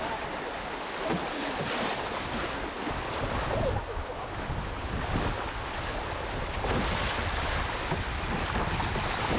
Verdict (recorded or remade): recorded